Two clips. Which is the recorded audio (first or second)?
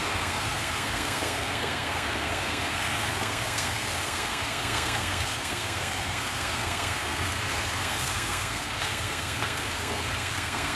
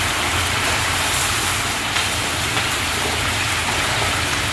second